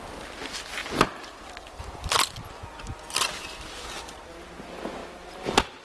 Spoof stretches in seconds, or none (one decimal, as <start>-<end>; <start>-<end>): none